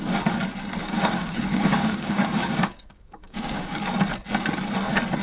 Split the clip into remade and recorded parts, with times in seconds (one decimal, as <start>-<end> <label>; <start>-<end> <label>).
0.0-0.8 recorded; 0.8-3.9 remade; 3.9-5.2 recorded